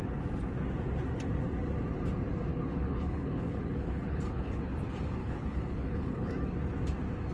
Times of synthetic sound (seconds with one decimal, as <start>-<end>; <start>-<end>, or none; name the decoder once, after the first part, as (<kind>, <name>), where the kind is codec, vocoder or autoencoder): 2.5-4.7 (codec, HILCodec); 5.2-6.3